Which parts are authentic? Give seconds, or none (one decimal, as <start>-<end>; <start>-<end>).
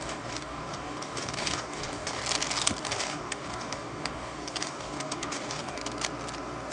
2.2-2.8; 5.8-6.7